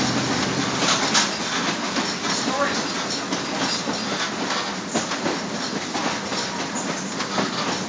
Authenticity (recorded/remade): recorded